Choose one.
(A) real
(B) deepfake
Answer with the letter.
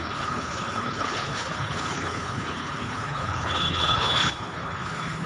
B